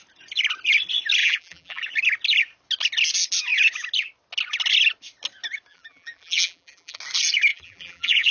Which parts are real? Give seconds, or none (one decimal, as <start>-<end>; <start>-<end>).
0.0-1.2; 1.8-5.7; 7.0-7.5